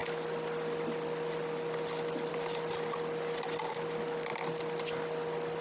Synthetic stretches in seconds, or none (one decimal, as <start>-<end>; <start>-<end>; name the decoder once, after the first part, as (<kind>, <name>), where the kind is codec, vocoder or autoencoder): none